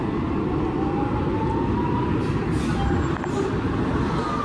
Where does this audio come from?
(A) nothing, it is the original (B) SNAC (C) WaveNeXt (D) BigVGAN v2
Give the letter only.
A